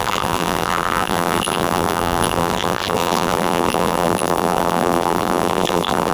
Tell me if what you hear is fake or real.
fake